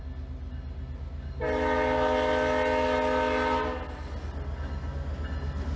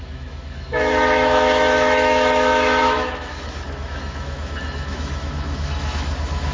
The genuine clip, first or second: first